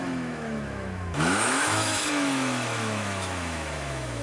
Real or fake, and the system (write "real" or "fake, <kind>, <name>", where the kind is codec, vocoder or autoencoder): fake, autoencoder, DAC-VAE